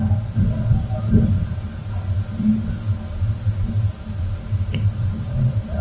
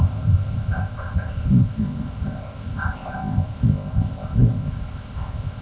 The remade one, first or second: second